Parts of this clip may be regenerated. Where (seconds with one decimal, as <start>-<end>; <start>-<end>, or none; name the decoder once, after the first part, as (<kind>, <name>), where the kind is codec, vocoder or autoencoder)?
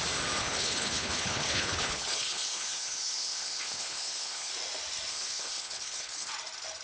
0.4-4.5 (codec, HILCodec); 5.1-6.3